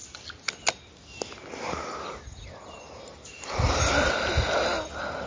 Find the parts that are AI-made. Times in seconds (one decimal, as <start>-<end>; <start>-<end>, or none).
none